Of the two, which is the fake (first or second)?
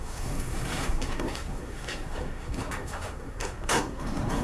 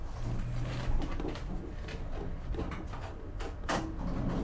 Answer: first